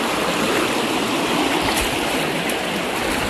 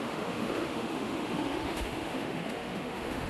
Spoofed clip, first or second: second